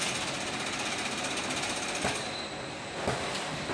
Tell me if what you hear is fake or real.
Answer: real